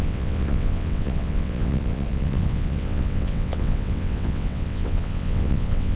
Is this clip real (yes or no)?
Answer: no